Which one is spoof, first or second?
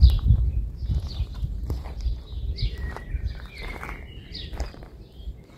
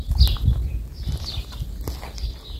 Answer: first